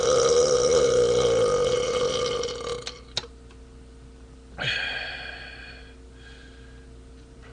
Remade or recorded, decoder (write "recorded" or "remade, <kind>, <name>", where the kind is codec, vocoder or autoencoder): recorded